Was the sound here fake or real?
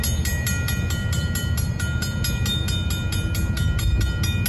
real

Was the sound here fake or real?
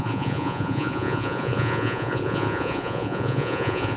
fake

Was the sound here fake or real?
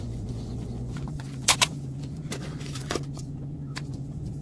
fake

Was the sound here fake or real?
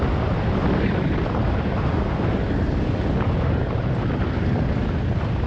real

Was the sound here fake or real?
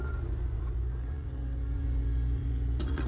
fake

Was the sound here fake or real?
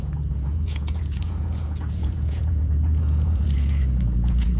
fake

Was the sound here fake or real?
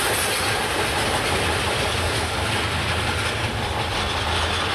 real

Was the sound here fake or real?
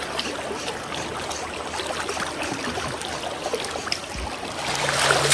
real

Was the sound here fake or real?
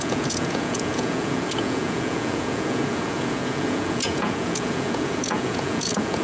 fake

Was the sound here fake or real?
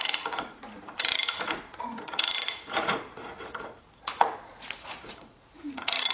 fake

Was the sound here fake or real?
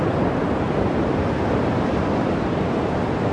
real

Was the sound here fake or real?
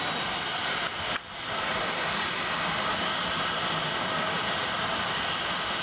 real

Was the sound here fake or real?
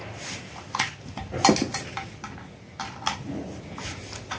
real